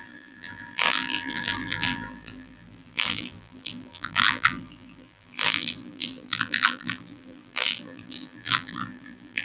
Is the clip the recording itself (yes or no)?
no